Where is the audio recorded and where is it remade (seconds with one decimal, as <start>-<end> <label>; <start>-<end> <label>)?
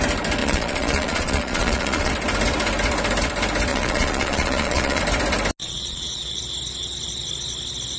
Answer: 0.0-0.4 recorded; 0.4-2.1 remade; 2.1-3.7 recorded; 3.7-5.0 remade; 5.0-5.6 recorded; 5.6-6.4 remade; 6.4-8.0 recorded